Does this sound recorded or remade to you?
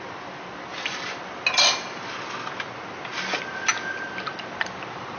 recorded